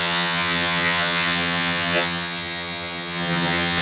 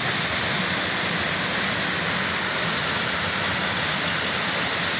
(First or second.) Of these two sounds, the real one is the second